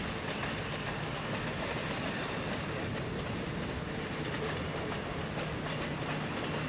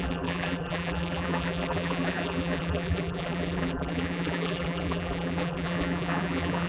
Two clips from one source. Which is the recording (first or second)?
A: first